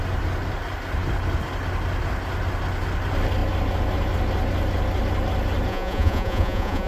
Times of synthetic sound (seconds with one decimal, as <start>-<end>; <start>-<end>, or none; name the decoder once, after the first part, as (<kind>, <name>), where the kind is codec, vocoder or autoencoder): 5.7-6.9 (vocoder, Vocos)